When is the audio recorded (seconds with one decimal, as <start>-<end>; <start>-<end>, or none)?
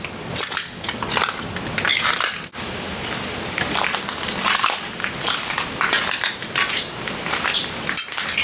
none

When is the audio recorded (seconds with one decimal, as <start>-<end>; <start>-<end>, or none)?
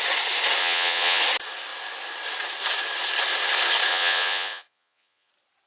0.0-0.6; 1.2-3.9; 5.3-5.7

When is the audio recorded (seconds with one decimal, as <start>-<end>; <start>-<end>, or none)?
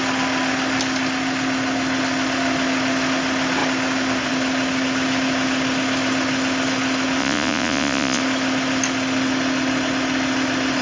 0.0-7.2; 8.2-10.8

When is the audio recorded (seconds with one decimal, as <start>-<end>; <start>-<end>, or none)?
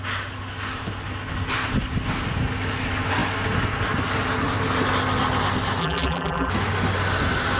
0.0-5.8; 6.5-7.6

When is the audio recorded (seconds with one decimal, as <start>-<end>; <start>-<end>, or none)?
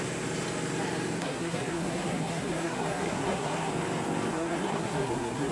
0.0-1.2; 3.7-4.3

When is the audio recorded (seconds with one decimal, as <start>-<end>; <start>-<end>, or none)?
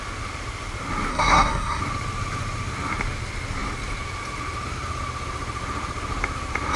0.0-1.1; 1.8-6.8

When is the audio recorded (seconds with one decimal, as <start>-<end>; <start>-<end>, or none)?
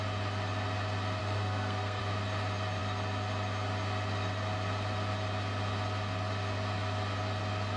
0.0-1.2; 2.0-7.8